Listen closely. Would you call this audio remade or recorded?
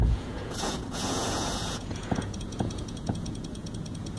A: remade